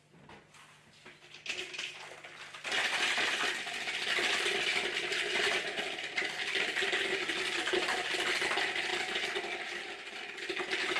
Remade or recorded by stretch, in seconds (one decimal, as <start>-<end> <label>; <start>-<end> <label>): 0.0-11.0 recorded